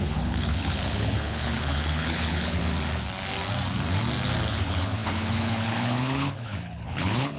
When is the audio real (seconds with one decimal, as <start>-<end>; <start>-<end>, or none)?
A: 2.6-4.5